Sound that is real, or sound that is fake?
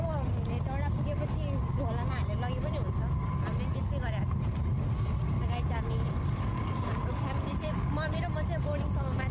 real